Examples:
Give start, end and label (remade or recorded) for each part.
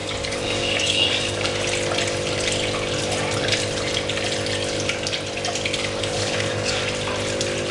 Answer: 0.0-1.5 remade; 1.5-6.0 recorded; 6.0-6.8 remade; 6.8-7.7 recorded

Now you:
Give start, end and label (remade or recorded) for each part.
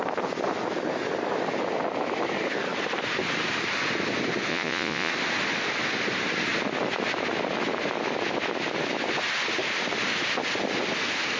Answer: 0.0-4.5 recorded; 4.5-5.1 remade; 5.1-11.4 recorded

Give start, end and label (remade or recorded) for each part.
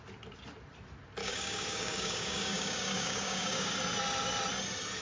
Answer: 0.0-1.2 recorded; 1.2-3.7 remade; 3.7-5.0 recorded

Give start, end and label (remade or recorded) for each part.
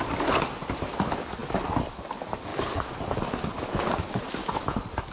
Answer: 0.0-1.4 recorded; 1.4-2.0 remade; 2.0-2.5 recorded; 2.5-4.2 remade; 4.2-5.1 recorded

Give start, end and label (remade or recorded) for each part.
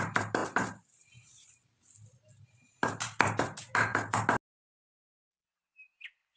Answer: 0.0-0.4 recorded; 0.4-1.8 remade; 1.8-6.4 recorded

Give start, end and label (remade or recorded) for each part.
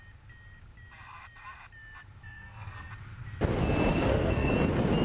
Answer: 0.0-2.2 recorded; 2.2-2.9 remade; 2.9-3.9 recorded; 3.9-4.5 remade; 4.5-5.0 recorded